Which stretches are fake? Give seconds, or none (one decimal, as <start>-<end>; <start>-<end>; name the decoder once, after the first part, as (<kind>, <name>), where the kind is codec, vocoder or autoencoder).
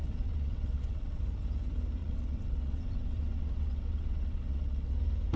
0.0-1.2 (vocoder, WaveNeXt); 2.0-4.9